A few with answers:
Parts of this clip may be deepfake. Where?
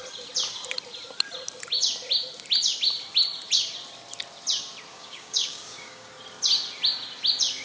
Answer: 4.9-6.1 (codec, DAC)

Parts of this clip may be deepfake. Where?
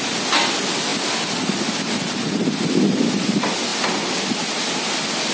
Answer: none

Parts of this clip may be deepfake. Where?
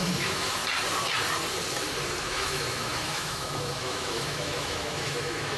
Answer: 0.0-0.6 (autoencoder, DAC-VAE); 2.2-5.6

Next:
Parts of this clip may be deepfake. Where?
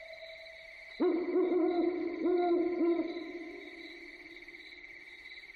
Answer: none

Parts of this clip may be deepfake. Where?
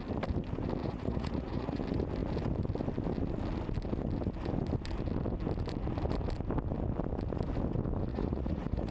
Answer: 0.8-1.8 (vocoder, Vocos); 8.1-8.9